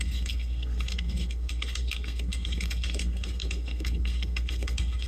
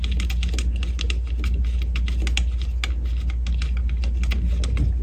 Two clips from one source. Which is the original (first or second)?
second